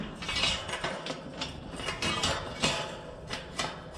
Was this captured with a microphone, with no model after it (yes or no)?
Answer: yes